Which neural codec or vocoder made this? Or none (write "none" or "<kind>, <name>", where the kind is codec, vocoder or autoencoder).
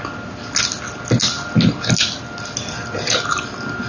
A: none